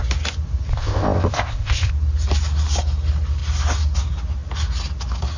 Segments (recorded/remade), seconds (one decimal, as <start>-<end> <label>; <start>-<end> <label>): 0.0-0.7 recorded; 0.7-1.9 remade; 1.9-5.4 recorded